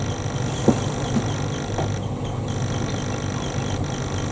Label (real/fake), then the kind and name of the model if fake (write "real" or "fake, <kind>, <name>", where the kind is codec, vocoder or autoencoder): real